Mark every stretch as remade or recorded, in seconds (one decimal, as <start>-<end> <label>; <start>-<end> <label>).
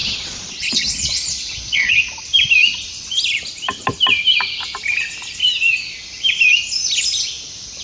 0.0-1.9 remade; 1.9-7.8 recorded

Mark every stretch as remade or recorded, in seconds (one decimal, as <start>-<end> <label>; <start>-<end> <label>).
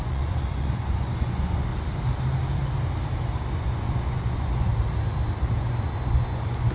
0.0-1.7 remade; 1.7-3.5 recorded; 3.5-4.7 remade; 4.7-5.6 recorded; 5.6-6.7 remade